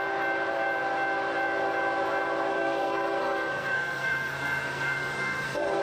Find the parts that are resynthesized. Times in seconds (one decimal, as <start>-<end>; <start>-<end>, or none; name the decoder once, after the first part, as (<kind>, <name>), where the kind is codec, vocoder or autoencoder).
2.5-5.8 (codec, SNAC)